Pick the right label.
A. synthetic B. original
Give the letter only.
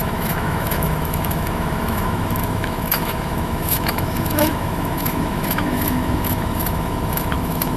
A